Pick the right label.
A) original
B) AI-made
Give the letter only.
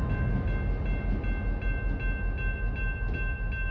A